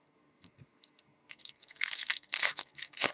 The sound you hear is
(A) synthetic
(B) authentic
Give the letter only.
A